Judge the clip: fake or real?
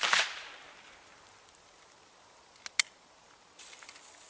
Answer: real